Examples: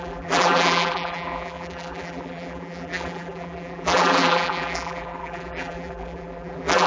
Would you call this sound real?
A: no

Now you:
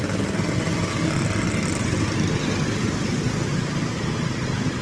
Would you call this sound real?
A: yes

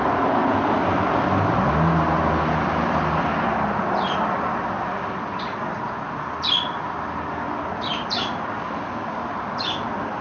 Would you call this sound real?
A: yes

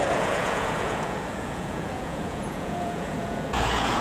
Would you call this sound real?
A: no